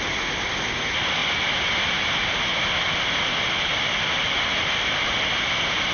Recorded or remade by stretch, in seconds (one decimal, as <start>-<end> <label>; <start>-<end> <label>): 0.0-5.9 recorded